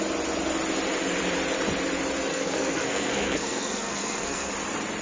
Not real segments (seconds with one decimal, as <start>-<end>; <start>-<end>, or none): 2.3-4.5